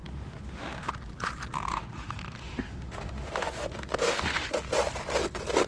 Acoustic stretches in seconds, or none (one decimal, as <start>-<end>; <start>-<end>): 0.9-1.7; 4.5-5.7